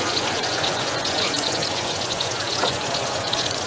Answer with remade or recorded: remade